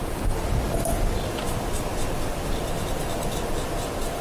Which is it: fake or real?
real